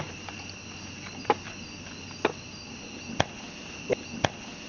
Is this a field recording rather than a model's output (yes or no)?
yes